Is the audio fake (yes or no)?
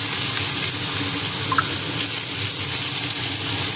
no